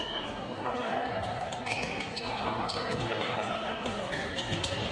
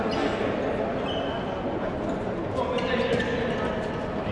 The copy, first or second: first